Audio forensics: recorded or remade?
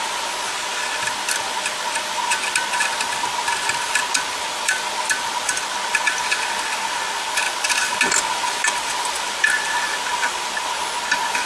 recorded